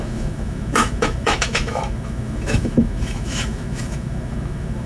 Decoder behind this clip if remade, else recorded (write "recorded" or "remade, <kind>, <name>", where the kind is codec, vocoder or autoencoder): remade, autoencoder, DAC-VAE